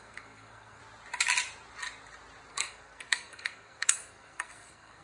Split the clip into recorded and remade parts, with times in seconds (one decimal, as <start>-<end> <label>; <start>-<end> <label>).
0.0-0.8 remade; 0.8-2.5 recorded; 2.5-5.0 remade